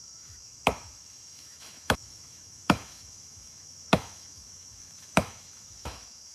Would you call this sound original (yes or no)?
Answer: no